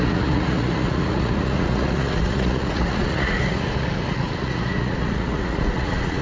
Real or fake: fake